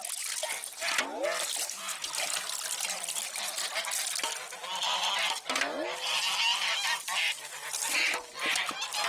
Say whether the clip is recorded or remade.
recorded